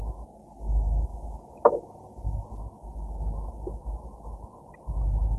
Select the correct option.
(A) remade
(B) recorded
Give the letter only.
B